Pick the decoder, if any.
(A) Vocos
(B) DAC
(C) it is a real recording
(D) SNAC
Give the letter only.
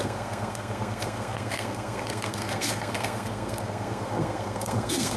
D